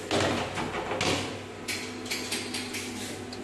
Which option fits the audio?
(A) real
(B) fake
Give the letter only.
A